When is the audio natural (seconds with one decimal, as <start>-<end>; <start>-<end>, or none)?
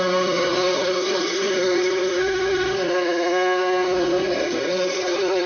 none